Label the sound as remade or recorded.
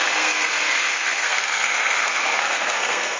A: remade